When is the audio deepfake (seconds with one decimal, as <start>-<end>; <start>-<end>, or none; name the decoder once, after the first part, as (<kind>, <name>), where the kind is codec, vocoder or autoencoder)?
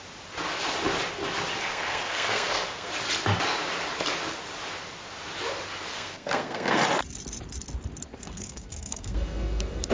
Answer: 1.6-2.9 (codec, SNAC); 5.9-6.8; 8.1-9.9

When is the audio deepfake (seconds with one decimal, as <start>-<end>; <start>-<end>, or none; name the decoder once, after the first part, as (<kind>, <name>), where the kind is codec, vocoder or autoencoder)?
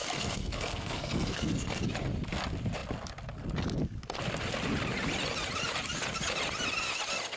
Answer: 0.0-1.8 (codec, SNAC)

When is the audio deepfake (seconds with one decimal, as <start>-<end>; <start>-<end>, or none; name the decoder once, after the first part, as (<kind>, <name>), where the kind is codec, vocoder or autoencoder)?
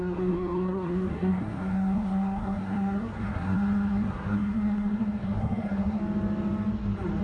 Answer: 0.0-6.0 (codec, SNAC)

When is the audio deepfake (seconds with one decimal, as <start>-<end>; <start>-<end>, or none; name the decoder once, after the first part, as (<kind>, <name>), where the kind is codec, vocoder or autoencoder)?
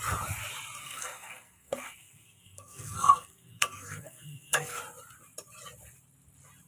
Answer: 0.8-4.8 (codec, SNAC)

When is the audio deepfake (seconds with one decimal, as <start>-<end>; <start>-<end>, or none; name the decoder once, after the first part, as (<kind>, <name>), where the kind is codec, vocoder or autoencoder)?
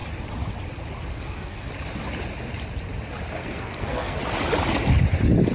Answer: 1.1-1.7 (codec, SNAC); 3.4-4.2